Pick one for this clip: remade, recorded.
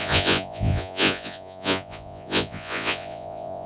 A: remade